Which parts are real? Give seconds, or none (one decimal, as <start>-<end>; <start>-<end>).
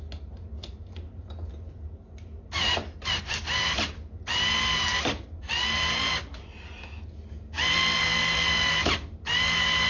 0.0-9.9